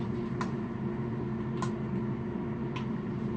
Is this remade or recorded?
recorded